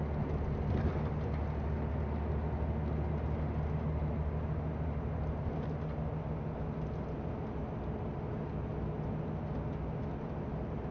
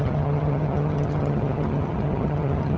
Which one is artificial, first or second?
second